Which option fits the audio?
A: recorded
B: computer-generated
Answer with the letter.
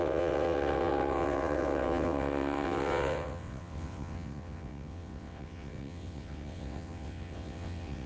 B